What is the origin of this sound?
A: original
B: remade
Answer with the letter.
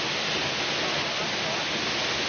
A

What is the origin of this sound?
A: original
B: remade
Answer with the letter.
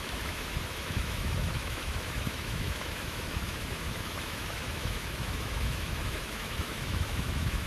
B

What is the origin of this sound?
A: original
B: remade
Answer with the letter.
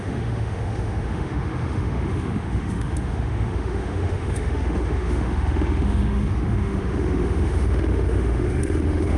B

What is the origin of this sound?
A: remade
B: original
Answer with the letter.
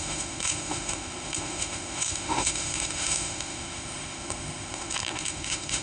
A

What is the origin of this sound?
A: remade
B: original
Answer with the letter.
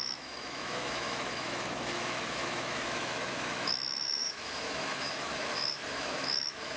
A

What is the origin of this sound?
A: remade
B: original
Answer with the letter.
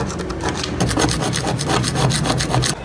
B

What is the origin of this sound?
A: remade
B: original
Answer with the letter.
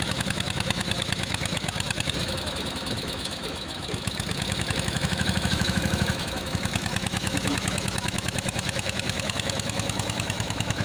A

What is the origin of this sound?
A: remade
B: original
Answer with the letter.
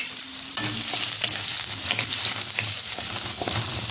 B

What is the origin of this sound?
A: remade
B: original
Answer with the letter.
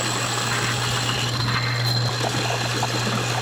B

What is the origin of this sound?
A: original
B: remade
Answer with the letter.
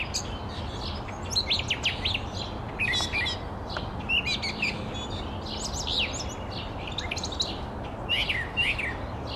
A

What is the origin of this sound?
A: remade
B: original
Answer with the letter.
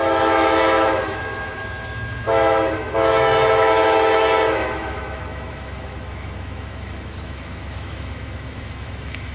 A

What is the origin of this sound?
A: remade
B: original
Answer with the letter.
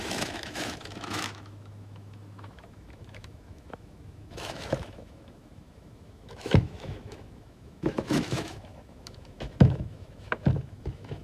A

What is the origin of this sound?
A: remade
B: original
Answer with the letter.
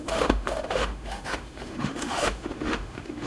A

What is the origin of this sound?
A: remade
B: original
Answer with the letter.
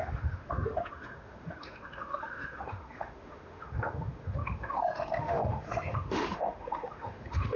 A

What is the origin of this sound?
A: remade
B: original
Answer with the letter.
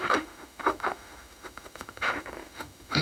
A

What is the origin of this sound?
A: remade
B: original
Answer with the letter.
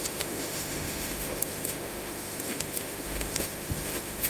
A